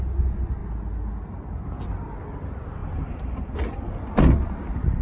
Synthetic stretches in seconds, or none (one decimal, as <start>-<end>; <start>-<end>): 2.8-4.1